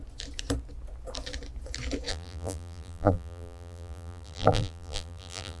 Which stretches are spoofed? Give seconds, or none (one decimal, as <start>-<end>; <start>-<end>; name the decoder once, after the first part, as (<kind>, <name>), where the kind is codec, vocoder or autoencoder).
2.1-5.6 (vocoder, BigVGAN v2)